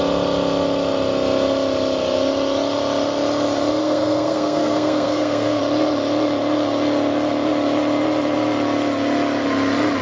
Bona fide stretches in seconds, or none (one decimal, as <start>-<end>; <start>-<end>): 0.0-3.8; 5.6-10.0